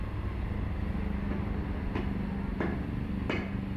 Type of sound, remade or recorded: recorded